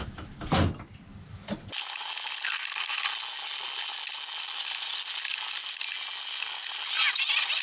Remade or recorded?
recorded